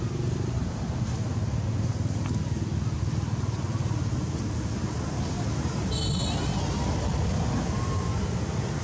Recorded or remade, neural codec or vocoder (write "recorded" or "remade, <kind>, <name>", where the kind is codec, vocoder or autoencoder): recorded